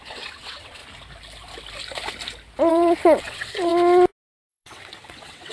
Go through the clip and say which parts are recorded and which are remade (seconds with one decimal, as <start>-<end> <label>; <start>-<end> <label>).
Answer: 0.0-0.8 remade; 0.8-2.7 recorded; 2.7-3.7 remade; 3.7-4.5 recorded; 4.5-5.5 remade